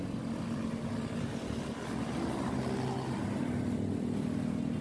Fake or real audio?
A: real